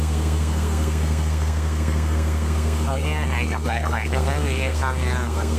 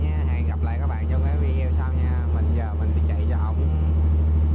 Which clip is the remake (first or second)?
first